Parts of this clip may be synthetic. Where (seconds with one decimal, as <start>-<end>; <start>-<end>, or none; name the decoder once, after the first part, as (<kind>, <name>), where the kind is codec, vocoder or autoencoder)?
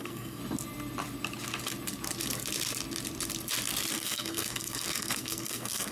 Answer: 0.0-0.4 (codec, SNAC); 3.9-5.9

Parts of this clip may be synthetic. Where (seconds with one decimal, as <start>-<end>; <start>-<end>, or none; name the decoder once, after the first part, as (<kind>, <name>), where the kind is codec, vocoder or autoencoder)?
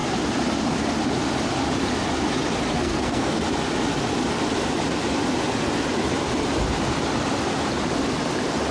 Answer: 2.7-3.4 (codec, SNAC)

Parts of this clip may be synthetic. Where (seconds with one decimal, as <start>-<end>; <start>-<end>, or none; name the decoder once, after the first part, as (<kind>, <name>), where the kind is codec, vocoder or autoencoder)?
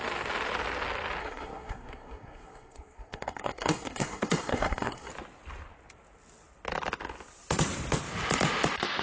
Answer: 1.2-5.1 (codec, SNAC)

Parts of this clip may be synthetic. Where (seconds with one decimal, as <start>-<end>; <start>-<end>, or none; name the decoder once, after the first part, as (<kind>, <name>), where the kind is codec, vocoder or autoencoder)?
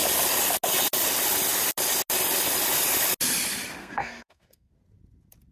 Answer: 3.8-4.7 (codec, SNAC)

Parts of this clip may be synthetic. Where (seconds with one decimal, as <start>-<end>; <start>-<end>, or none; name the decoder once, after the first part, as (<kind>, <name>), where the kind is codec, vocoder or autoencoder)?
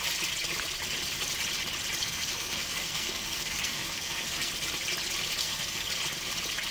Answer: 2.0-4.5 (codec, SNAC); 5.4-5.9